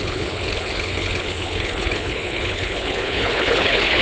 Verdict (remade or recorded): remade